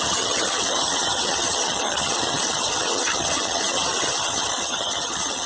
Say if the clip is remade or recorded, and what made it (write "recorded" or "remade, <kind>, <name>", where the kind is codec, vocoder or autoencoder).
remade, vocoder, HiFi-GAN